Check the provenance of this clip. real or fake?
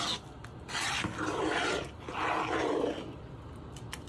real